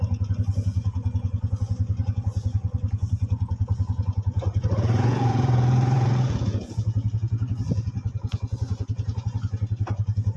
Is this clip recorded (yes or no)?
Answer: no